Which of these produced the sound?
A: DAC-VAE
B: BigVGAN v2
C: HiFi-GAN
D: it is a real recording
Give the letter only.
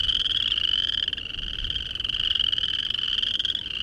D